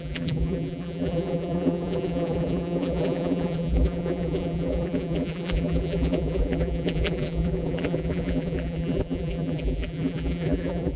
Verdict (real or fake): fake